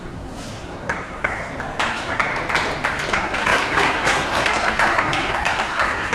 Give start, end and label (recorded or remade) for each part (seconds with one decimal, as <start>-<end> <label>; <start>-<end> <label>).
0.0-1.4 remade; 1.4-1.9 recorded; 1.9-2.3 remade; 2.3-3.1 recorded; 3.1-6.1 remade